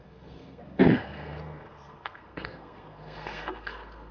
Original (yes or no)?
no